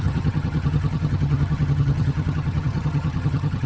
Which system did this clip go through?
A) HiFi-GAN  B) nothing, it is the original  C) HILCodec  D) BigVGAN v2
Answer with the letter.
A